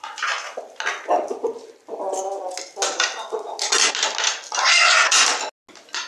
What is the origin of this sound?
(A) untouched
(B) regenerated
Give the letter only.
A